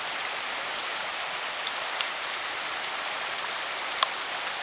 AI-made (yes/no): no